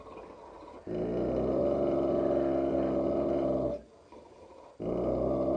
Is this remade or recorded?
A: recorded